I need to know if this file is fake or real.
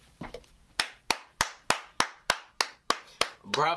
fake